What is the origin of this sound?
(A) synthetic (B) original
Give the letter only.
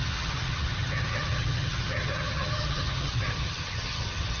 A